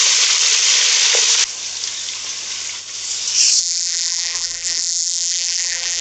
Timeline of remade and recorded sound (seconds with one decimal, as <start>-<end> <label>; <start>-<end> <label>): 0.0-3.6 recorded; 3.6-6.0 remade